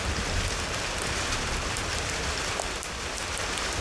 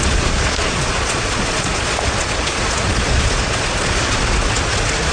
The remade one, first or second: second